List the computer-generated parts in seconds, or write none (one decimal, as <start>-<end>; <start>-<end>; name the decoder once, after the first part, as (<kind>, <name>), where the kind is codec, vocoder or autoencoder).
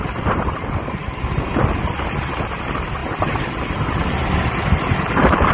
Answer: none